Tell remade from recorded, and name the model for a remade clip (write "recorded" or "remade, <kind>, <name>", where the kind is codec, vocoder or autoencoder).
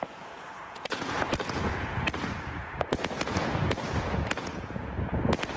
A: remade, vocoder, Vocos